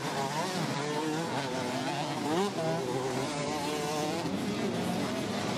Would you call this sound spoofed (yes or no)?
no